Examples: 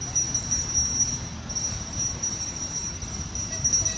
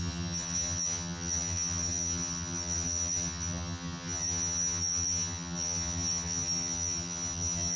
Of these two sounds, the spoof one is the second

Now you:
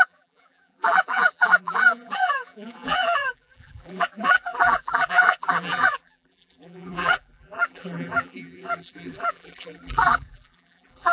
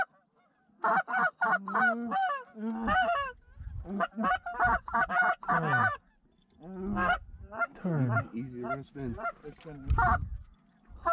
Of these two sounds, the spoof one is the first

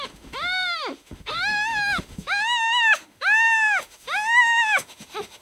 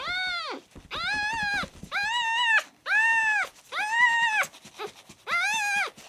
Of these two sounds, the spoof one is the first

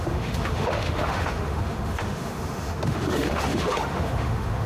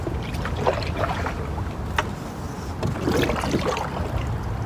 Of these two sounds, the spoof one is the first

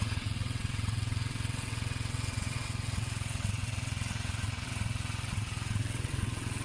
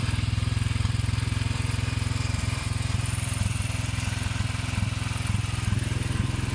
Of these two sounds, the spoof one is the first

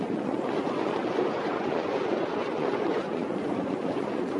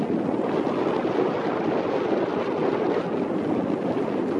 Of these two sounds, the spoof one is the first